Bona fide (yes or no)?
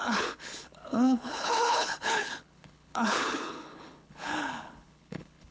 no